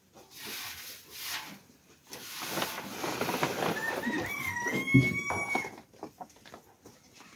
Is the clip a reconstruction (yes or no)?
no